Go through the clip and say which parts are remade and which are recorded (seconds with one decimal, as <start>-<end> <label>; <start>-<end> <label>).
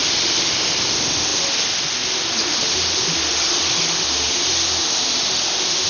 0.0-5.9 recorded